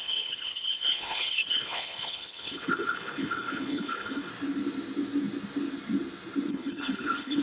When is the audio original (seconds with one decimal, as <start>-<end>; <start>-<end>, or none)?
4.3-6.5